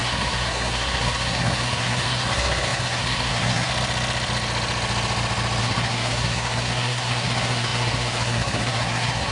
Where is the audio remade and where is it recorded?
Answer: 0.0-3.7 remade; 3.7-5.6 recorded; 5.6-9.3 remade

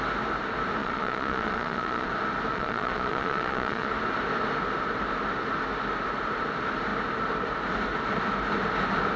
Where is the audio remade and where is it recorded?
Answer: 0.0-0.8 recorded; 0.8-2.1 remade; 2.1-2.5 recorded; 2.5-3.9 remade; 3.9-9.2 recorded

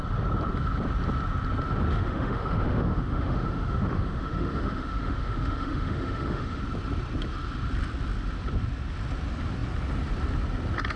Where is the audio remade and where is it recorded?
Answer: 0.0-1.9 recorded; 1.9-6.6 remade; 6.6-11.0 recorded